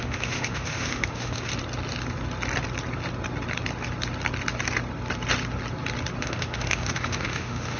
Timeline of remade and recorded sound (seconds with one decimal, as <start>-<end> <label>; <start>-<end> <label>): 0.0-1.5 remade; 1.5-6.2 recorded; 6.2-7.8 remade